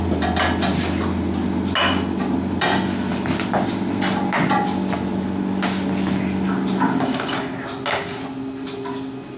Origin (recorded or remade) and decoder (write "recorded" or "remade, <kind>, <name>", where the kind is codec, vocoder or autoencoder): recorded